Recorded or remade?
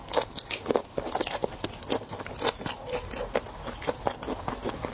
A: recorded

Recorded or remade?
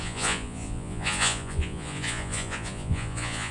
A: remade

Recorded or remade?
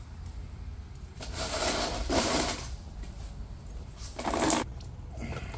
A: recorded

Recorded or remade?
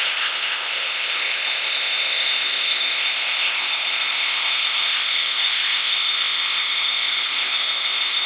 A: remade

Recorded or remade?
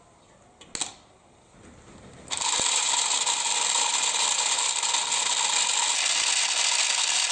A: recorded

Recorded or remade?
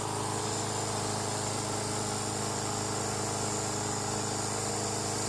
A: recorded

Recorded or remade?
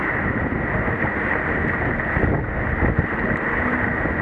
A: recorded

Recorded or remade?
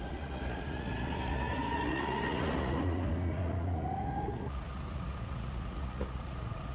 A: remade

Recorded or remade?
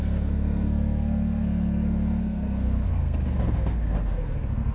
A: remade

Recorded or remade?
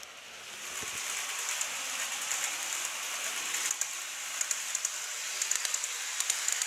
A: recorded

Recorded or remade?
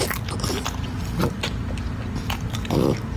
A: recorded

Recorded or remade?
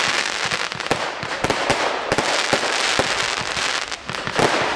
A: recorded